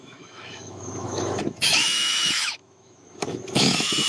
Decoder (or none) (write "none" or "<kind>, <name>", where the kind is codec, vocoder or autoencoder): autoencoder, DAC-VAE